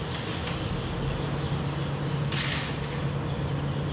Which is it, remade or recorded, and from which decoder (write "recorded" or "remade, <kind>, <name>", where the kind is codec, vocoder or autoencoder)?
recorded